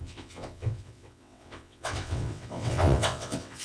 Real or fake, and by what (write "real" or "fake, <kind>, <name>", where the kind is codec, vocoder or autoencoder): fake, vocoder, WaveNeXt